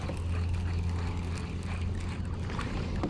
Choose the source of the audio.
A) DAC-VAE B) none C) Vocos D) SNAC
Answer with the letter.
B